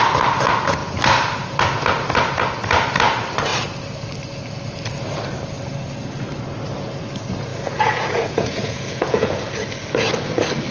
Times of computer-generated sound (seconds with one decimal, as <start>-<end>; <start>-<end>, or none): 7.5-9.5